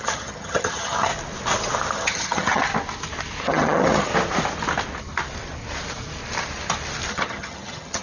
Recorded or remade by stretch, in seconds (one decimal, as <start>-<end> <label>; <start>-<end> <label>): 0.0-1.1 remade; 1.1-1.9 recorded; 1.9-2.7 remade; 2.7-3.4 recorded; 3.4-4.1 remade; 4.1-7.1 recorded; 7.1-8.0 remade